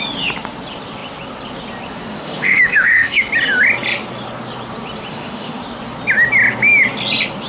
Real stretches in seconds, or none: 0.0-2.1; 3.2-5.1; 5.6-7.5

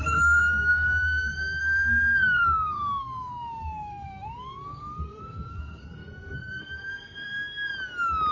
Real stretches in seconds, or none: 7.7-8.3

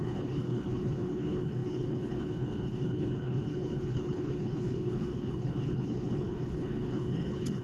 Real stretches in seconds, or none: none

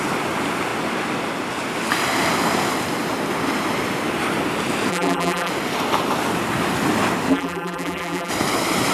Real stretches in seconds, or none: 0.0-4.9; 5.5-7.3; 8.3-8.9